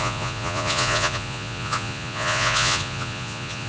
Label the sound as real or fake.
fake